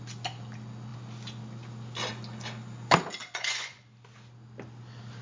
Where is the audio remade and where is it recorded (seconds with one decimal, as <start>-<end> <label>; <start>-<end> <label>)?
0.0-3.2 recorded; 3.2-3.8 remade; 3.8-5.2 recorded